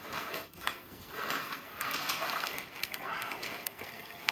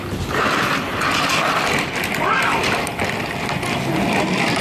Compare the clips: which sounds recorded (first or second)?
second